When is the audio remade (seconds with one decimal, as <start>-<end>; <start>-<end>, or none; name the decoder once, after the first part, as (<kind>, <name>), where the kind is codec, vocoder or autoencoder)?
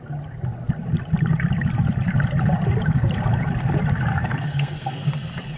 4.1-5.1 (codec, SNAC)